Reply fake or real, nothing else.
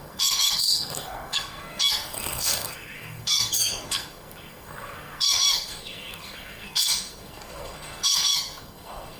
fake